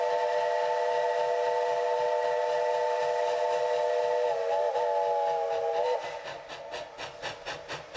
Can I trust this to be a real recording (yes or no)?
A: yes